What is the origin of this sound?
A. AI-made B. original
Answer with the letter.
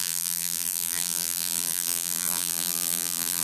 A